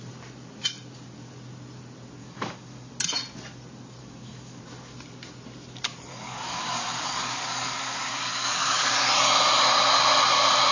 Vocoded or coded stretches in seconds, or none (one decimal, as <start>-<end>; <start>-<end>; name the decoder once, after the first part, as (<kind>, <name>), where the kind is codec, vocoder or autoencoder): 2.2-2.9 (codec, DAC); 4.0-4.6; 6.1-9.1